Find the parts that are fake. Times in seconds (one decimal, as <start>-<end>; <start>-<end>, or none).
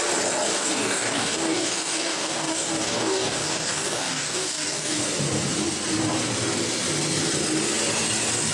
0.5-5.0